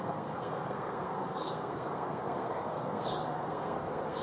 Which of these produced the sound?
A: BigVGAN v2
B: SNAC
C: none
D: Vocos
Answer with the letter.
B